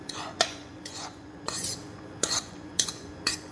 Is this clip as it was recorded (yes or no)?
no